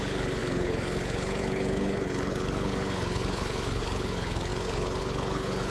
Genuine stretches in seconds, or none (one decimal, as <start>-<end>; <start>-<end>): none